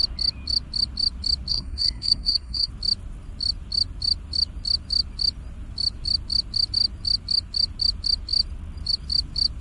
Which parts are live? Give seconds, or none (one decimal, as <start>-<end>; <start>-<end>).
0.0-1.5; 2.7-9.6

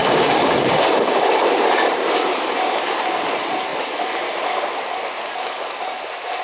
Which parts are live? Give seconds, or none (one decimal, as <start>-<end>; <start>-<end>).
1.4-6.4

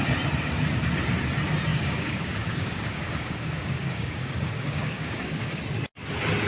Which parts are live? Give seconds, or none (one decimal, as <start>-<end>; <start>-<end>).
0.0-1.7; 5.6-6.5

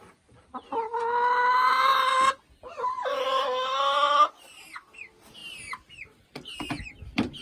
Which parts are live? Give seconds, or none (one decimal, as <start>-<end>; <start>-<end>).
0.0-7.4

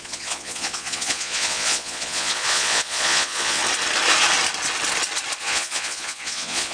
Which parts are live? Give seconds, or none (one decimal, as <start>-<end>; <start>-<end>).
3.6-5.4

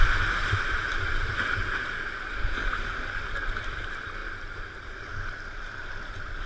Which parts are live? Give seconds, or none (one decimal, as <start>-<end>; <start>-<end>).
0.0-0.4; 1.9-6.5

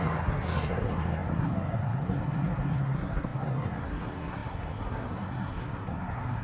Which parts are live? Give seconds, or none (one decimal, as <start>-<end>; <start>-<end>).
none